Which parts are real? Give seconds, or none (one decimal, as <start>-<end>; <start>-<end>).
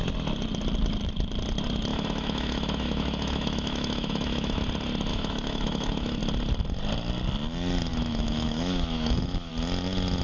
0.0-1.9; 4.6-5.1; 6.2-7.9; 9.5-10.2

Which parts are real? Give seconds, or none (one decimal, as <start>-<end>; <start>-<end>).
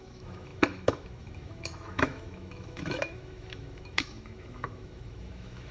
none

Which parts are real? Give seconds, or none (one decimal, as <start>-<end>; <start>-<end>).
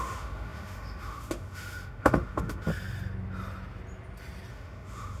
2.7-4.5